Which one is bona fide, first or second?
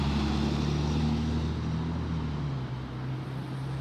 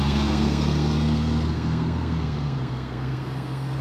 first